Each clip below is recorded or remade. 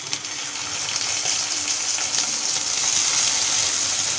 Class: recorded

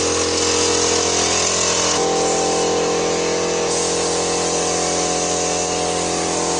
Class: recorded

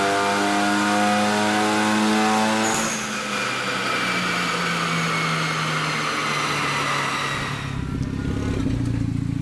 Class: recorded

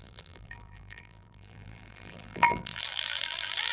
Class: remade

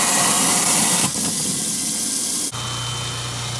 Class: recorded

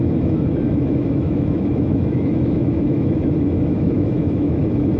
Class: remade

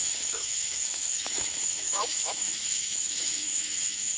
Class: remade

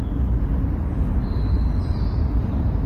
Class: recorded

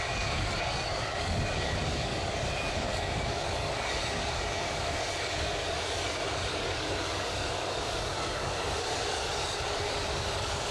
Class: remade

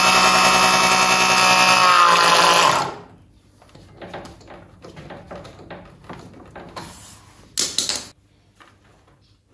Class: recorded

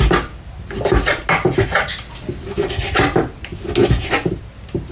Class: recorded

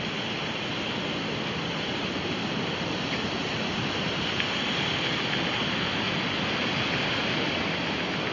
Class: recorded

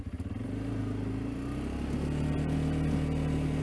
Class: recorded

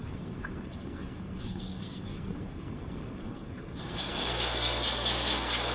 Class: remade